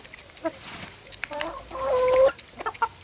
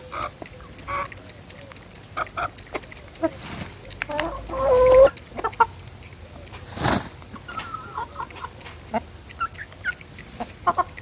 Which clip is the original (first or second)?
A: second